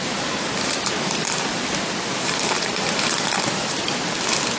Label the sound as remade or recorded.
recorded